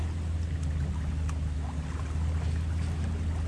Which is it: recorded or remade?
recorded